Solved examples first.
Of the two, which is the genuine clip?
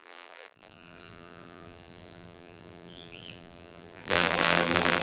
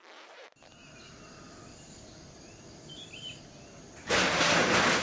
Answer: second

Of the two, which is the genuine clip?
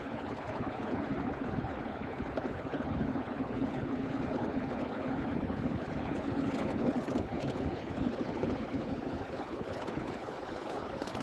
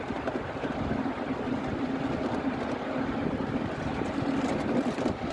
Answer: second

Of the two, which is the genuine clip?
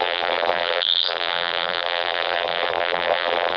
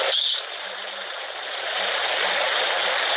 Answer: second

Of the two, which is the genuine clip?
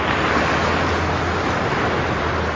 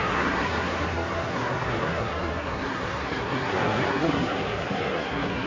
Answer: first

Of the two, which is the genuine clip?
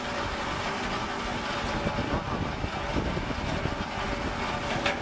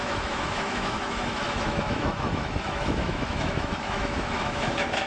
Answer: first